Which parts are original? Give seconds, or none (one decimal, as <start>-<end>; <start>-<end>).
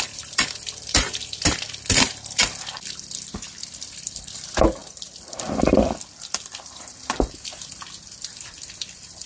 none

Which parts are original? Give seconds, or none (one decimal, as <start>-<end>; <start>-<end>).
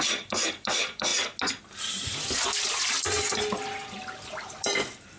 1.1-1.6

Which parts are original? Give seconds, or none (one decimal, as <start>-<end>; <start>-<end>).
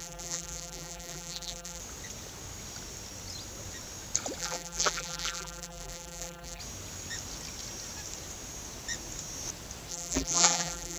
1.8-4.4; 6.6-9.9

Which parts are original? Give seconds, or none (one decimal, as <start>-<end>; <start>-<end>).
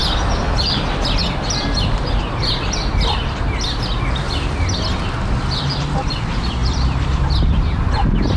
0.0-1.2; 3.2-6.6; 7.4-8.4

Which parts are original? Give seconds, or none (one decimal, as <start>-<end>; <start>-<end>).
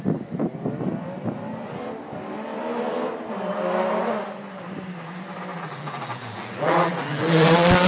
0.0-5.5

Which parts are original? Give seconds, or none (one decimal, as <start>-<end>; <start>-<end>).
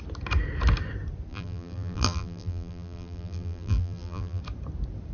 0.0-1.3; 4.4-5.1